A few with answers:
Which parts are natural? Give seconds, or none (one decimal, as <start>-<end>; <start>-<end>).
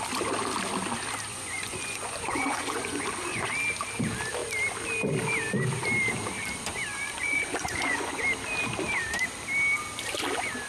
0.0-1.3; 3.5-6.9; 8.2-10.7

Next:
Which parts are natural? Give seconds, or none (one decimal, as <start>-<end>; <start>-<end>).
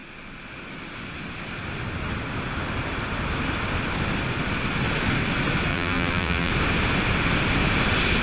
0.0-5.7; 6.5-8.2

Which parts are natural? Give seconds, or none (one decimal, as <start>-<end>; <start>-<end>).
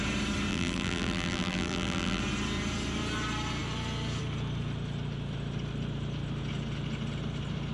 0.0-0.5; 2.2-7.7